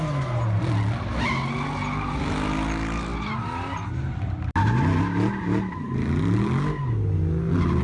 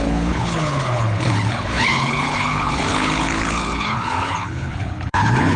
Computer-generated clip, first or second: second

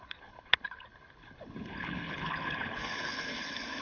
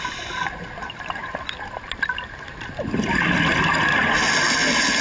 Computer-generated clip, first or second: first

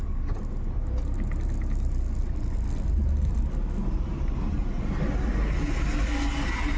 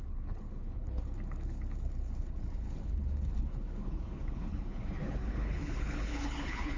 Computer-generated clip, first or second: second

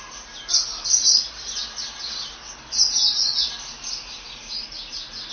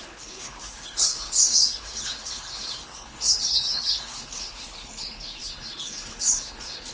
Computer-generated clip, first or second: second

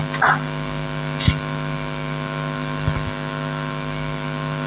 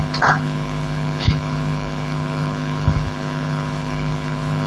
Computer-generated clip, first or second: second